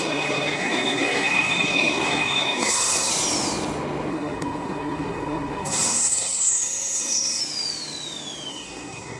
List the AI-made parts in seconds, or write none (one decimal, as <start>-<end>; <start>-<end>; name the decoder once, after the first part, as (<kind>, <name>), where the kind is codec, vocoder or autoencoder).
0.0-3.1 (codec, SNAC); 4.1-7.4; 8.5-9.2